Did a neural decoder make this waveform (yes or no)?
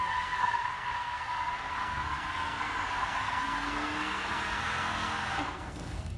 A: yes